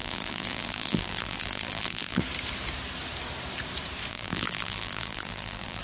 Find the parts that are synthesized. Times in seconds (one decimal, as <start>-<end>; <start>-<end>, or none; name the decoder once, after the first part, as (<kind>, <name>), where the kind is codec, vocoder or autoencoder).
0.0-2.2 (vocoder, BigVGAN v2); 4.1-5.8